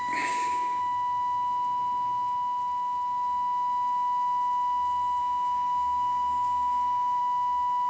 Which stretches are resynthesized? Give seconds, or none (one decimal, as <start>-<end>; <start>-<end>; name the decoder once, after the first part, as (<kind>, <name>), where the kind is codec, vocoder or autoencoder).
0.0-0.8 (codec, DAC); 5.2-7.2